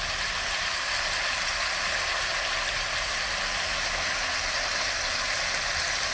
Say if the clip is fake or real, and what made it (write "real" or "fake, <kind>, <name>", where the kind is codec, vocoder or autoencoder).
real